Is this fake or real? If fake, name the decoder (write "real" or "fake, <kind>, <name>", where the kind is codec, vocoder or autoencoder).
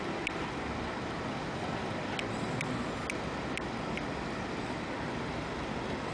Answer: real